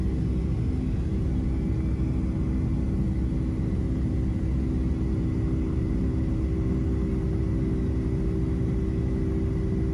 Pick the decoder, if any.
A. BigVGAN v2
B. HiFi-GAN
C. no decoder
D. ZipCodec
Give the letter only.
C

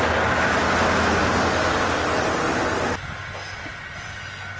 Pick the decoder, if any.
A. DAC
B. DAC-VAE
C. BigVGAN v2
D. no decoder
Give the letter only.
D